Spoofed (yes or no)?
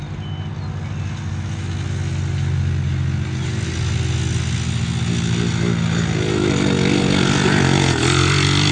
no